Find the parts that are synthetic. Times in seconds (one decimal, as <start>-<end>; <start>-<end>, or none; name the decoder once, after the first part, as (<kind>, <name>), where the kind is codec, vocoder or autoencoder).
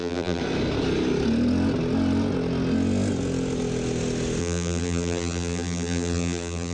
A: 0.0-0.4 (vocoder, BigVGAN v2); 4.4-6.7